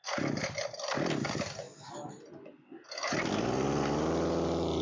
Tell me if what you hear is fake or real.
real